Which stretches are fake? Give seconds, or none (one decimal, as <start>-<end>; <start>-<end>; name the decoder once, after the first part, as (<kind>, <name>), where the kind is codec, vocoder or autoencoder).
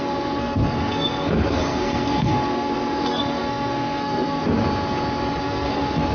0.0-4.4 (codec, SNAC); 5.4-6.1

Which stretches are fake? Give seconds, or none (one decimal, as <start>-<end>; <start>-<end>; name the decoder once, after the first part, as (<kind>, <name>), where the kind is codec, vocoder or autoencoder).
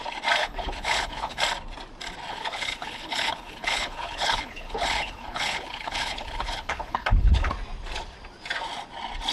0.4-1.4 (codec, HILCodec); 2.3-7.5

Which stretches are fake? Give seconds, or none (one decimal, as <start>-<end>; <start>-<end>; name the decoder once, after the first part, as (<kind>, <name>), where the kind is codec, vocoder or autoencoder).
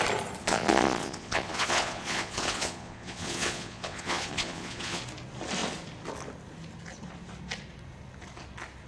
0.4-5.0 (vocoder, Vocos)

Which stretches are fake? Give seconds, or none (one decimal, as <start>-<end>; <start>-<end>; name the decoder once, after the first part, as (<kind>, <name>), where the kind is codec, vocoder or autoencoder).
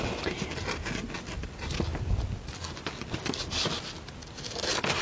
none